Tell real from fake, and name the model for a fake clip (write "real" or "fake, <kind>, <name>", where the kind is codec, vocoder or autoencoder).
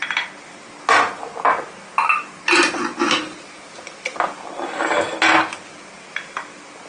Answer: real